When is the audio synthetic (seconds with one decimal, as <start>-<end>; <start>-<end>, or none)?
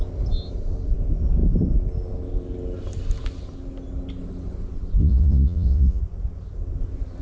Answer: 5.0-6.0